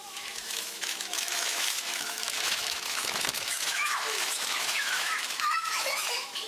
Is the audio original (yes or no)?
no